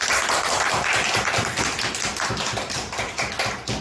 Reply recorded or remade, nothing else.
remade